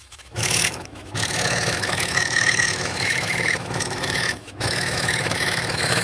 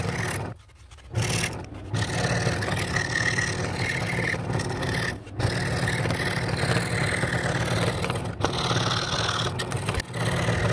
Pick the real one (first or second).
second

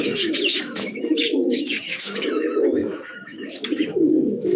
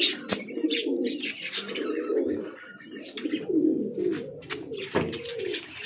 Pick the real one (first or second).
second